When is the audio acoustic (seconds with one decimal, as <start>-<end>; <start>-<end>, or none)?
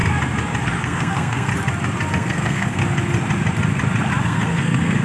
0.0-0.6; 1.5-2.1; 2.8-4.2